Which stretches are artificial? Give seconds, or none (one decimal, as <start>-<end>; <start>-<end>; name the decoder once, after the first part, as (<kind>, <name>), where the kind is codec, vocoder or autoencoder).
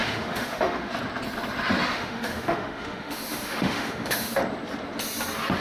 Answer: 0.0-0.9 (autoencoder, DAC-VAE); 1.9-4.4